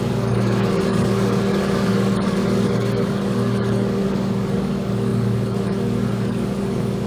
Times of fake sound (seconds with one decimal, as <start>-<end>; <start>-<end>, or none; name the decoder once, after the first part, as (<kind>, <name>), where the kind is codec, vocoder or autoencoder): 0.0-7.1 (codec, DAC)